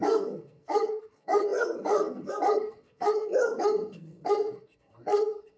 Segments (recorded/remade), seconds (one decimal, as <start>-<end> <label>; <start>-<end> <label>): 0.0-5.6 remade